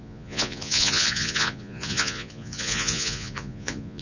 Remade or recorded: remade